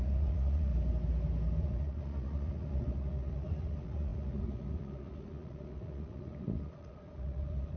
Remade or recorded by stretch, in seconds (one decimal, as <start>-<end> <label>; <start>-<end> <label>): 0.0-0.7 remade; 0.7-1.6 recorded; 1.6-7.8 remade